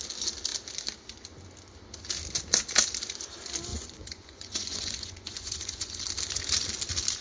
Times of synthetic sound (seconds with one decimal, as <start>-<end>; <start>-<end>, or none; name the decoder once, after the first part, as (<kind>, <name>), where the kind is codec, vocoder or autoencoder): 3.7-6.0 (vocoder, Vocos)